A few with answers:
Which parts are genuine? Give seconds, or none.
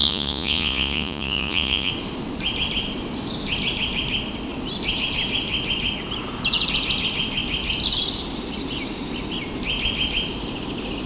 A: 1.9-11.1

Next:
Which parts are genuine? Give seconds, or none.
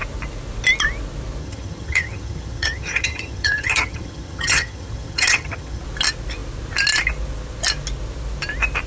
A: 0.0-1.4; 5.8-8.9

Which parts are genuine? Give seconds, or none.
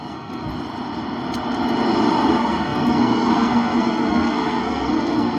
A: 0.5-2.3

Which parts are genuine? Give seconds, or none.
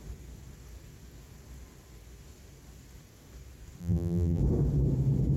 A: 0.0-3.8; 4.4-5.4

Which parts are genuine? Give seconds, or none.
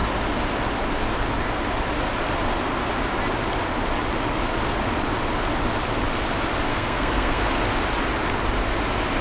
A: 0.0-6.7; 7.4-9.2